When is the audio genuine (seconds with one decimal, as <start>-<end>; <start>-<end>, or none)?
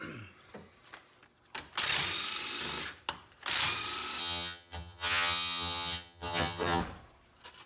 0.0-4.2; 6.8-7.7